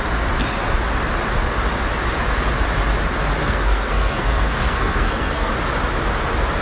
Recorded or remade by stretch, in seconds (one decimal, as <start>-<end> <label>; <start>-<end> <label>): 0.0-3.4 recorded; 3.4-5.5 remade; 5.5-6.6 recorded